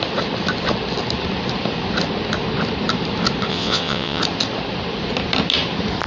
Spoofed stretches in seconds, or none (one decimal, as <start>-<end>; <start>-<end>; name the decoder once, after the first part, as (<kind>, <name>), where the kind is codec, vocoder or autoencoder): 3.5-4.2 (vocoder, WaveNeXt)